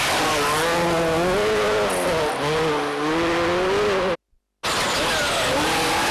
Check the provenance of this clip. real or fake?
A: real